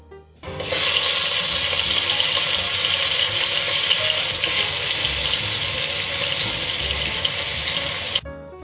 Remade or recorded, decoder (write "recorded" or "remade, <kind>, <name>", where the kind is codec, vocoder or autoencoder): recorded